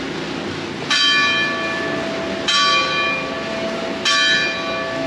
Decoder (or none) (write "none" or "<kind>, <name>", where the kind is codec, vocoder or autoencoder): none